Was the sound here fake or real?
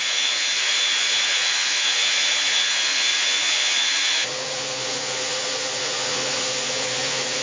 fake